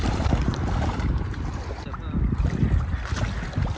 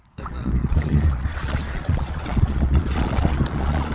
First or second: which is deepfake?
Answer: second